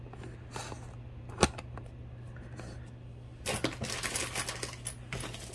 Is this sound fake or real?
real